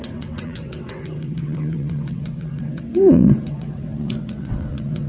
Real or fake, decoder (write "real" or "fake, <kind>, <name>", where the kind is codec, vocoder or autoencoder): fake, vocoder, WaveNeXt